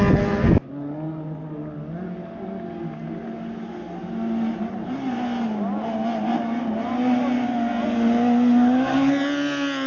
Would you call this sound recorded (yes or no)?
yes